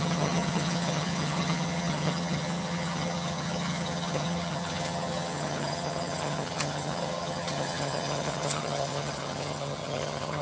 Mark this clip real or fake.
fake